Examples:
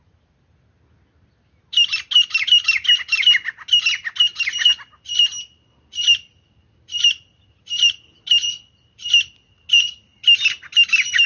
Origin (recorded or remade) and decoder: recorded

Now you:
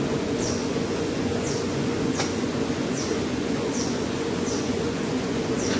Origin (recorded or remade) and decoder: remade, vocoder, Vocos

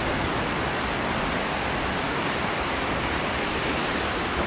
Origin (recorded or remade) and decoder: remade, vocoder, BigVGAN v2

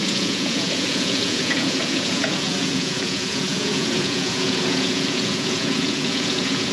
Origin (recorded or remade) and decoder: remade, vocoder, Vocos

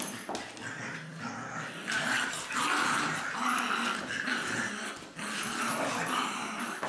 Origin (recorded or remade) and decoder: recorded